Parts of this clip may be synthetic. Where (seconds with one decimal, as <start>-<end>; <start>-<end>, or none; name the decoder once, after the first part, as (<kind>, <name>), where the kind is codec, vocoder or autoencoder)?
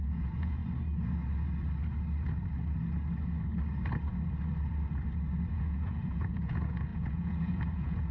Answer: 0.0-0.6 (vocoder, Vocos); 5.5-8.1